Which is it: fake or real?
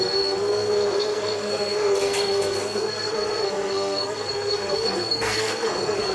fake